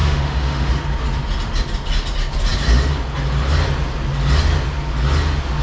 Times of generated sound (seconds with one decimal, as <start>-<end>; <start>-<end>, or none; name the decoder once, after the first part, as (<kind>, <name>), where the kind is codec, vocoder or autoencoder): 0.0-0.7 (autoencoder, DAC-VAE)